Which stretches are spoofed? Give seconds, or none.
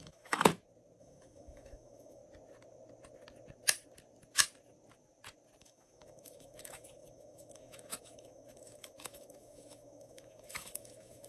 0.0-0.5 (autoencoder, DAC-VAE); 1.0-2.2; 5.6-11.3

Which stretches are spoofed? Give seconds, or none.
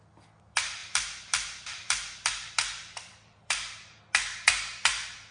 0.8-4.0 (vocoder, BigVGAN v2)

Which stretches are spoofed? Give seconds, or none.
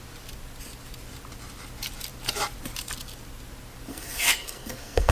3.9-5.1 (codec, SNAC)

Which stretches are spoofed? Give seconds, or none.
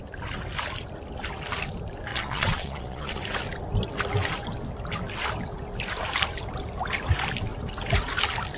2.1-3.2 (vocoder, Vocos)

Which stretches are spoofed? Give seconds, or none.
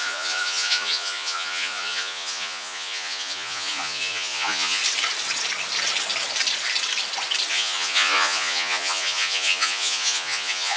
0.0-4.8 (vocoder, Vocos); 7.5-10.8